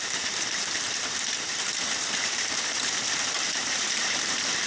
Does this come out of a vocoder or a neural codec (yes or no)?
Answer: yes